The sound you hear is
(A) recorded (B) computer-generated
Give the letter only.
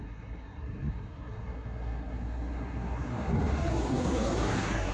B